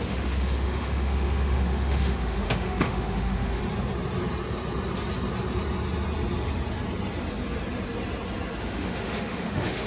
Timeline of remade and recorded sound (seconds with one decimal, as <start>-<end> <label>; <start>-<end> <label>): 0.0-3.6 remade; 3.6-8.6 recorded; 8.6-9.9 remade